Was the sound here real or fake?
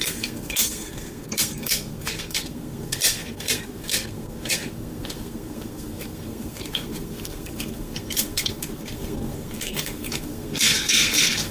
fake